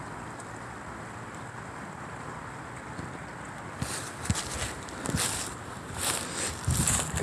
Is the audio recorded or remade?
recorded